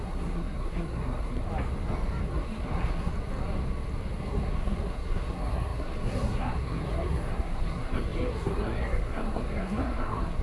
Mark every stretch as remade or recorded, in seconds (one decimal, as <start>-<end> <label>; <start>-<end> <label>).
0.0-1.5 remade; 1.5-2.2 recorded; 2.2-3.1 remade; 3.1-4.2 recorded; 4.2-10.4 remade